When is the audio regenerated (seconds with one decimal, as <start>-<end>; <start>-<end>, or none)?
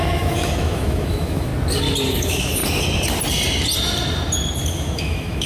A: 0.0-1.5; 2.1-2.6; 4.7-5.5